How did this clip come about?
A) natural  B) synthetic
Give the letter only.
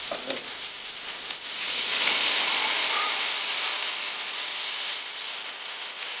A